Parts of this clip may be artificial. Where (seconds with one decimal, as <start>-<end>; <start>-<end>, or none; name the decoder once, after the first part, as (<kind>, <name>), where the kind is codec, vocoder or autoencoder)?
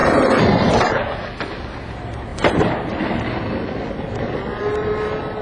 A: 0.0-1.3 (vocoder, BigVGAN v2)